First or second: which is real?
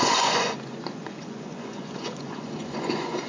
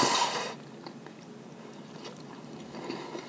second